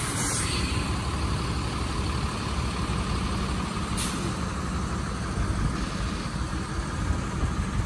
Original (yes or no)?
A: yes